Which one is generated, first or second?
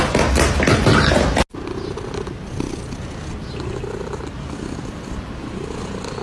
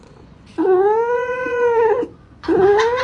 second